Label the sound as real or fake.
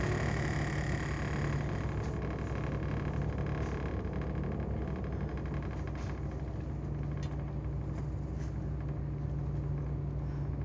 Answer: real